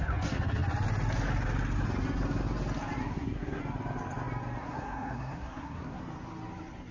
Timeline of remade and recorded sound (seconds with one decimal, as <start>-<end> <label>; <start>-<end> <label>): 0.0-3.0 recorded; 3.0-3.6 remade; 3.6-4.6 recorded; 4.6-6.0 remade; 6.0-6.9 recorded